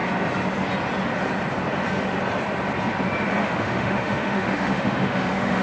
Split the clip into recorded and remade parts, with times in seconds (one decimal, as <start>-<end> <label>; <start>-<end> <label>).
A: 0.0-3.4 recorded; 3.4-5.6 remade